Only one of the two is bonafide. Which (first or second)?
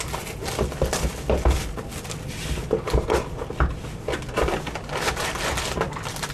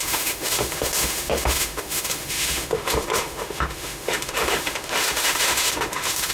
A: first